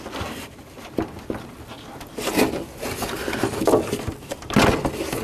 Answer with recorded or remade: recorded